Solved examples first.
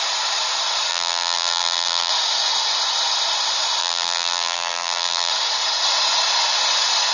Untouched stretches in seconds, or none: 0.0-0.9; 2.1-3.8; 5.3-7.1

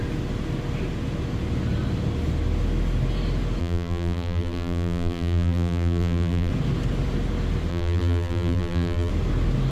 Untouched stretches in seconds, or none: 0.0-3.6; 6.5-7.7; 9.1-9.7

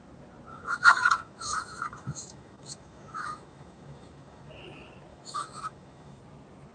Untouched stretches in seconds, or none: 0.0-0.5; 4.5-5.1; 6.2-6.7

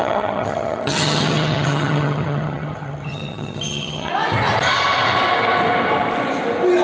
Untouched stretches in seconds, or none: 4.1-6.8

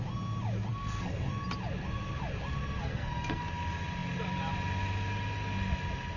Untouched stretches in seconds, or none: 0.0-0.7; 1.3-2.8; 3.4-6.2